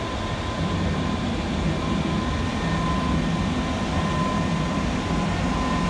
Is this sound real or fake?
real